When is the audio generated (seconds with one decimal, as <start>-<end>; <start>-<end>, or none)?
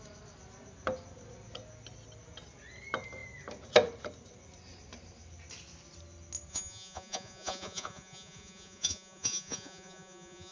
6.5-10.5